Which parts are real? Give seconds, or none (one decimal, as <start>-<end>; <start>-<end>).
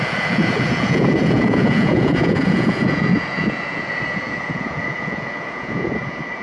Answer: none